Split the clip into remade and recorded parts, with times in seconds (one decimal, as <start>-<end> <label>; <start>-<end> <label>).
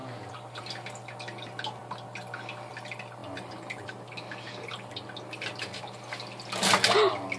0.0-3.2 recorded; 3.2-3.9 remade; 3.9-7.4 recorded